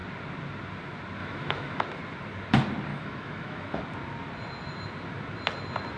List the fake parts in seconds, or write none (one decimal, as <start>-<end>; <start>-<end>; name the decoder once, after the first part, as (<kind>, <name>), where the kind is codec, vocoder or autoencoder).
1.2-1.8 (autoencoder, DAC-VAE); 2.9-3.8